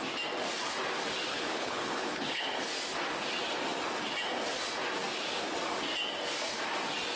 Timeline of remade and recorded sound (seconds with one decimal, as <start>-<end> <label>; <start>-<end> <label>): 0.0-1.3 recorded; 1.3-2.7 remade; 2.7-7.2 recorded